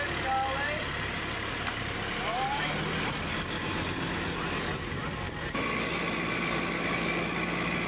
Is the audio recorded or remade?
recorded